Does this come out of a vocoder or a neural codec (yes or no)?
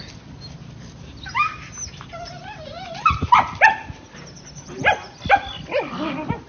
no